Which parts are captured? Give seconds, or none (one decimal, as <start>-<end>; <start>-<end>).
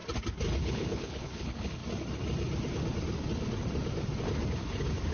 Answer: 0.0-0.6; 1.8-5.1